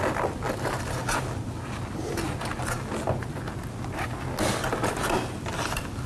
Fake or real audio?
real